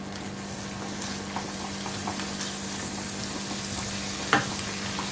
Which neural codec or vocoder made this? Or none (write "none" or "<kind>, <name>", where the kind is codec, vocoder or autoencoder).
none